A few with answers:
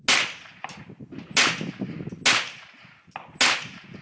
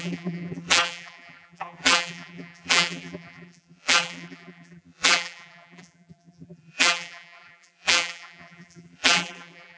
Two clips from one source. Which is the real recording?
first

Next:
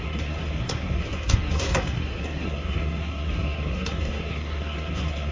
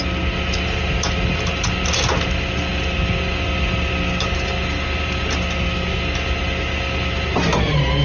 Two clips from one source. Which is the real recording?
second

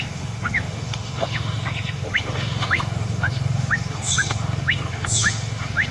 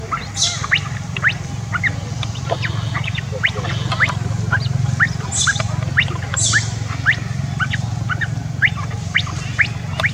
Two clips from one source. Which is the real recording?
second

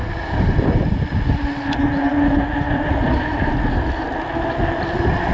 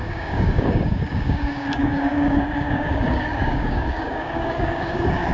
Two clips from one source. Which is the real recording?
first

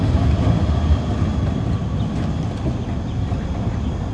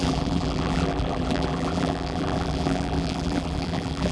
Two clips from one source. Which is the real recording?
first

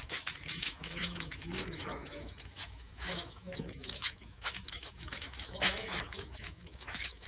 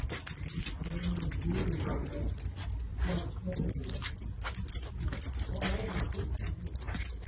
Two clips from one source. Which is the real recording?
second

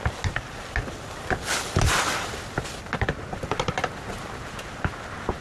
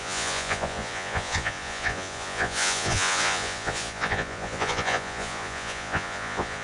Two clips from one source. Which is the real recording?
first